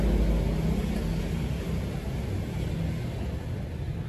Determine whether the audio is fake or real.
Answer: real